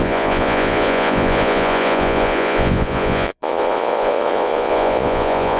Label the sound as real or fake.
fake